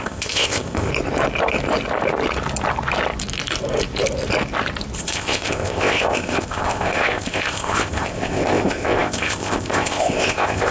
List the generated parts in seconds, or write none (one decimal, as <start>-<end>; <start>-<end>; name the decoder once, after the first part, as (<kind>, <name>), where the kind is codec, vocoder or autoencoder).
0.0-0.9 (codec, ZipCodec); 5.0-10.7